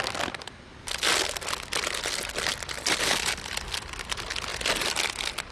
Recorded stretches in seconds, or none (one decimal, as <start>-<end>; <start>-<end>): 0.0-5.5